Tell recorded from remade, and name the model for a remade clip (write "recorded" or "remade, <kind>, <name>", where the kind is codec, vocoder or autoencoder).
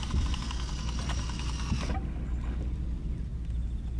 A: recorded